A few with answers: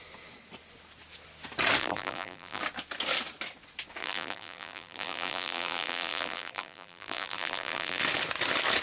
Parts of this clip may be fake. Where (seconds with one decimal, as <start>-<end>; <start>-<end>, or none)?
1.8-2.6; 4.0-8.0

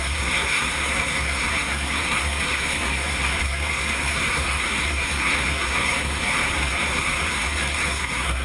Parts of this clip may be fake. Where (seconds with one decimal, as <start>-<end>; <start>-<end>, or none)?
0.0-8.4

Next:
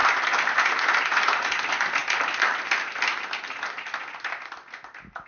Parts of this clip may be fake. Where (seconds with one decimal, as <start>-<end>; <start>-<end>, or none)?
0.0-0.5

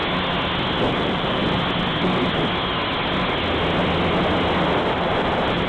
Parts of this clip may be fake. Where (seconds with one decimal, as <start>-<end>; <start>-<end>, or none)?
0.9-1.4; 4.8-5.7

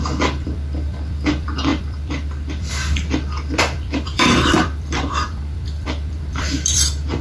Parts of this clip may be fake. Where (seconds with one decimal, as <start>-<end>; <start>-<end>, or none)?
0.0-7.2

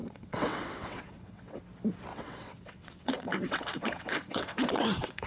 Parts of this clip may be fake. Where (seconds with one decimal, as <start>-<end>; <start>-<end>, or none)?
0.0-1.6; 2.1-5.3